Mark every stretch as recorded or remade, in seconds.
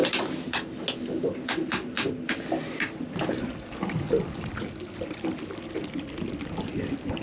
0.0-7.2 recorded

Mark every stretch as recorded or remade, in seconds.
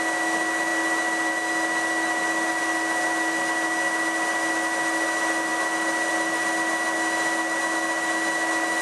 0.0-8.8 recorded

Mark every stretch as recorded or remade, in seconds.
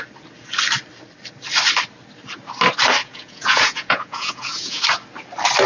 0.0-3.0 recorded; 3.0-4.8 remade; 4.8-5.7 recorded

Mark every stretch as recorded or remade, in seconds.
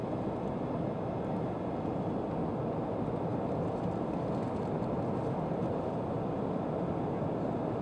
0.0-7.8 recorded